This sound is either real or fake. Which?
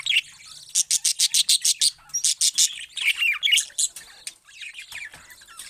real